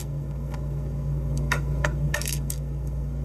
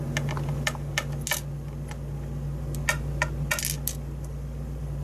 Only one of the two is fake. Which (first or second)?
first